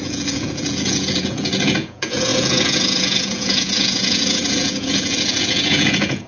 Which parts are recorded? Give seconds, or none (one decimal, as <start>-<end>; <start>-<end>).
none